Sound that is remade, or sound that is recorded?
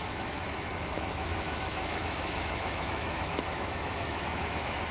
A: remade